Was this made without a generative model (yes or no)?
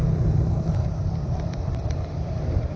no